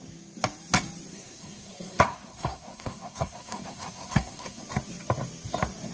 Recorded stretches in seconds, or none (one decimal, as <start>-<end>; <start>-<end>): 0.0-1.1; 4.6-5.9